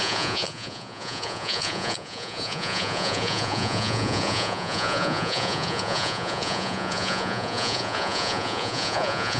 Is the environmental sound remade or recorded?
remade